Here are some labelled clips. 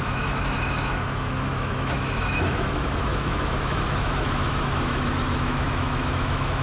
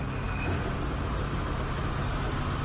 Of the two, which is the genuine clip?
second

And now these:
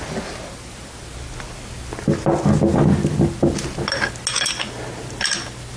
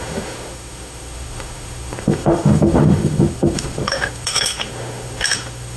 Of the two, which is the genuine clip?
first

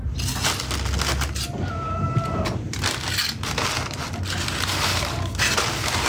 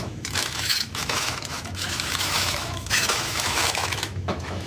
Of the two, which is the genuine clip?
first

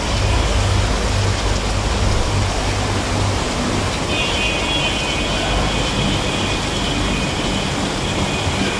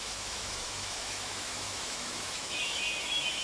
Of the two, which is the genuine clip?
first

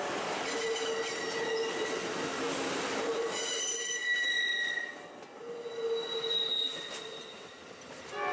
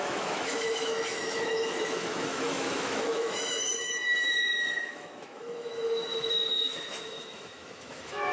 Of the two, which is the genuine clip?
first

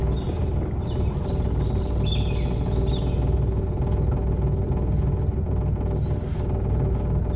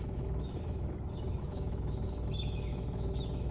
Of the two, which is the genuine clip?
first